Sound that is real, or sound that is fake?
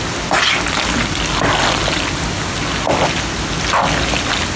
real